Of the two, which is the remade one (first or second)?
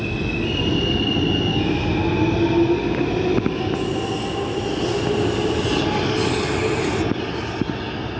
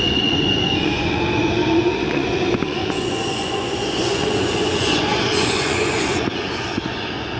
second